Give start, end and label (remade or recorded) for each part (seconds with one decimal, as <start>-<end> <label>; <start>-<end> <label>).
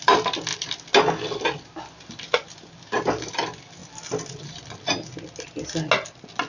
0.0-6.5 recorded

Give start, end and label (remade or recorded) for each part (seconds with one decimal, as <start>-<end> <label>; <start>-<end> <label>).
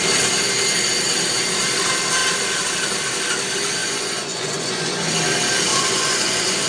0.0-3.8 recorded; 3.8-5.1 remade; 5.1-5.7 recorded; 5.7-6.7 remade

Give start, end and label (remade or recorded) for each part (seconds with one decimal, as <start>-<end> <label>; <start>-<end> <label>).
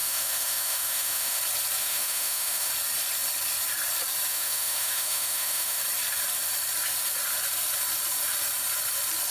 0.0-1.4 remade; 1.4-1.8 recorded; 1.8-2.7 remade; 2.7-4.3 recorded; 4.3-5.8 remade; 5.8-9.3 recorded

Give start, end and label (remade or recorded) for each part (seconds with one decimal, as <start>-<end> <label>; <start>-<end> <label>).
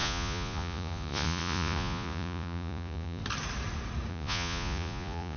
0.0-3.2 remade; 3.2-4.1 recorded; 4.1-5.4 remade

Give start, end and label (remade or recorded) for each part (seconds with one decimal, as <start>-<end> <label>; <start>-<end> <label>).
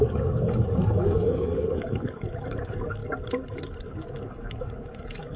0.0-3.0 remade; 3.0-3.8 recorded; 3.8-5.4 remade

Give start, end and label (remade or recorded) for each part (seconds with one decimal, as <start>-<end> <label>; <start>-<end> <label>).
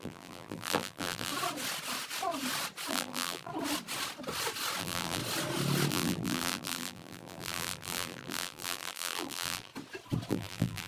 0.0-1.3 remade; 1.3-2.9 recorded; 2.9-3.5 remade; 3.5-4.8 recorded; 4.8-5.2 remade; 5.2-5.9 recorded; 5.9-9.7 remade; 9.7-10.3 recorded; 10.3-10.9 remade